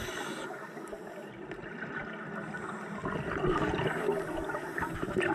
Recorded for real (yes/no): yes